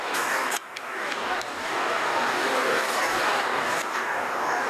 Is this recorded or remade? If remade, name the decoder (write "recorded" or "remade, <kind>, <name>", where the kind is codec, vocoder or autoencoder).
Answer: remade, codec, DAC